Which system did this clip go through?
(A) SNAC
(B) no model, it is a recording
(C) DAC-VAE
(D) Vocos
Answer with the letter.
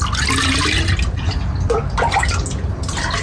B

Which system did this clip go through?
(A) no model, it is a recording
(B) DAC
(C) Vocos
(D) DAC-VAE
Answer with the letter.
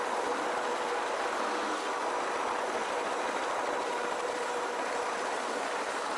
A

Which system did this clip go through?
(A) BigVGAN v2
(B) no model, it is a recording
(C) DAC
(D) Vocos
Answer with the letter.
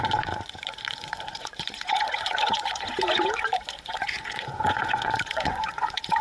D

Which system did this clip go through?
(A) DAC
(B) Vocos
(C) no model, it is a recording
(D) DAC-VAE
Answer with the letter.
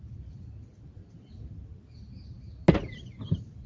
C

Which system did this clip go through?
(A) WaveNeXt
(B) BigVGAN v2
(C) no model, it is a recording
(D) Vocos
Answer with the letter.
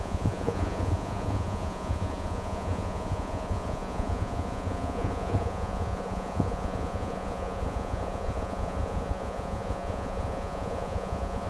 D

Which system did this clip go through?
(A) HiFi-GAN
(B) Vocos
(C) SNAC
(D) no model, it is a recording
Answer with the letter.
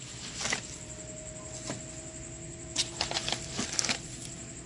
D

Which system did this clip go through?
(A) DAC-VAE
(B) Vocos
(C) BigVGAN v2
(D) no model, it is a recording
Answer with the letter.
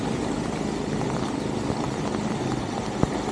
D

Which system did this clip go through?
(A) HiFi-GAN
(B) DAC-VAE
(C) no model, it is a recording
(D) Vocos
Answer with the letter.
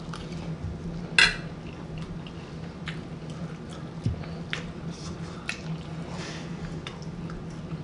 C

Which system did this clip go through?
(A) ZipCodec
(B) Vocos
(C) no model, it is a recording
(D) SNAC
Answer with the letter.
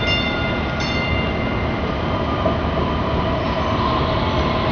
C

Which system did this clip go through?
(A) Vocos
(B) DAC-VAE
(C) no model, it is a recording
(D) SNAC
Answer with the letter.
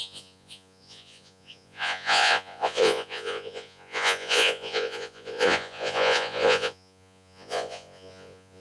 A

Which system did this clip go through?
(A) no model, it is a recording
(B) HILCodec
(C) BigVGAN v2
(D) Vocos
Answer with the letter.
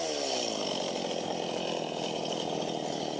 A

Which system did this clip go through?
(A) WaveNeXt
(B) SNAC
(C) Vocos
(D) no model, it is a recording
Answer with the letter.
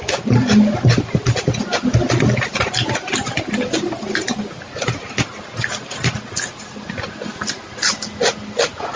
D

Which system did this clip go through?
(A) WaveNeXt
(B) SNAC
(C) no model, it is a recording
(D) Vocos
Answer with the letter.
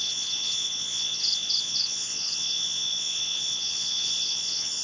D